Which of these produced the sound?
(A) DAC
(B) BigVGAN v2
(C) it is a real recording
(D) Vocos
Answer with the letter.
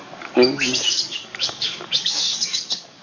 A